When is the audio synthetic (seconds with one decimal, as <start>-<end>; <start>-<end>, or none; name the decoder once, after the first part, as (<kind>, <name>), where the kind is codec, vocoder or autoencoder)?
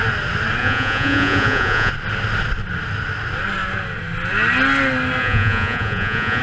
0.6-1.9 (vocoder, Vocos); 5.2-6.4